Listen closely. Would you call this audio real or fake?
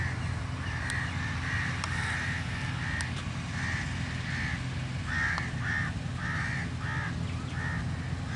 real